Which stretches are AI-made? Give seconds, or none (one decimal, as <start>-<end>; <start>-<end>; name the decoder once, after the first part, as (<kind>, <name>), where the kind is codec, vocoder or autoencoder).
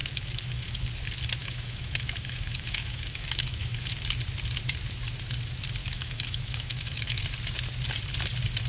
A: 0.0-0.7 (autoencoder, DAC-VAE); 1.4-3.9; 5.8-7.2